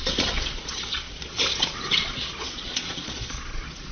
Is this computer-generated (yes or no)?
yes